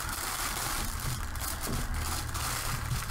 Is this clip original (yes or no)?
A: yes